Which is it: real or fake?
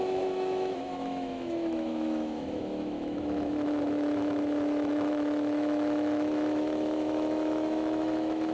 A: fake